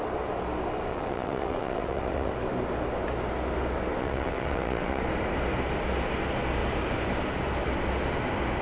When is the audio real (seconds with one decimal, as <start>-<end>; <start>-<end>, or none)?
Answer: 0.0-0.9; 2.3-4.0; 5.0-8.6